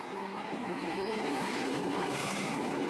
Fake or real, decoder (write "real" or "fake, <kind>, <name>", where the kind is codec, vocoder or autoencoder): fake, codec, SNAC